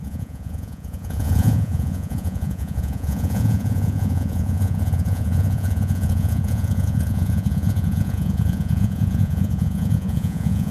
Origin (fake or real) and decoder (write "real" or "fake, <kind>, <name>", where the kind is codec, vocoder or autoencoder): fake, vocoder, Vocos